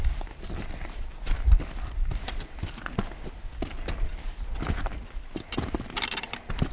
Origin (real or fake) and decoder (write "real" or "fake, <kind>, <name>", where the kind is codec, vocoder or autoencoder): real